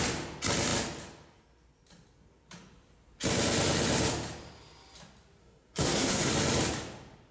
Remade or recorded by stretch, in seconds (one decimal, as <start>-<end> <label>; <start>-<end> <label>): 0.0-5.4 recorded; 5.4-6.3 remade; 6.3-7.3 recorded